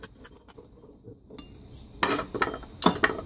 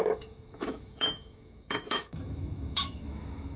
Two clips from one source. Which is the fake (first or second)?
second